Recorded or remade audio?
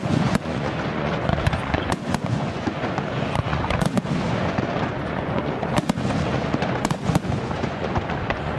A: remade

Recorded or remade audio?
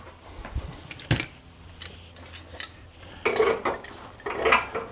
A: recorded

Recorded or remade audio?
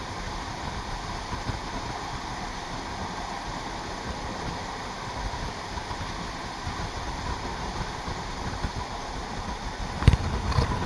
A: recorded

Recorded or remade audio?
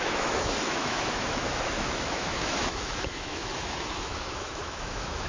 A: remade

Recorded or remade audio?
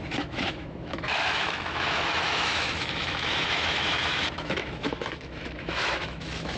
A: remade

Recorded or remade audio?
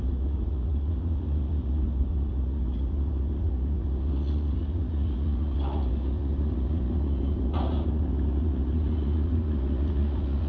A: remade